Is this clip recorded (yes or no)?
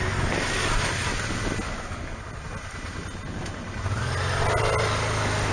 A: yes